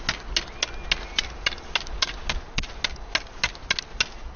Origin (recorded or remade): recorded